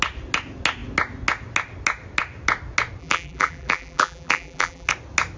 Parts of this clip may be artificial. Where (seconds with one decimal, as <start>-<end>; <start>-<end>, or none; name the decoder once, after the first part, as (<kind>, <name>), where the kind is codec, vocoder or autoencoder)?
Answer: 3.0-4.9 (vocoder, BigVGAN v2)